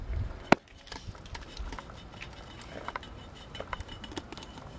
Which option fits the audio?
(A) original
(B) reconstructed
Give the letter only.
A